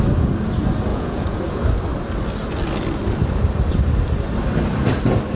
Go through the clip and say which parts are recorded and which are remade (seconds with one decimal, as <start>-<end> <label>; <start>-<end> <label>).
0.0-0.9 recorded; 0.9-1.4 remade; 1.4-5.4 recorded